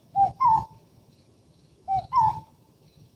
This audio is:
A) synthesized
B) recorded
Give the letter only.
A